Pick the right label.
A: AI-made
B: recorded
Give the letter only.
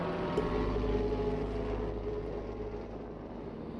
B